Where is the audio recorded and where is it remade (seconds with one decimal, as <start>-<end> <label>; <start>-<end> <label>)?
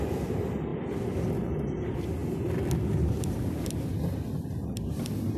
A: 0.0-5.4 recorded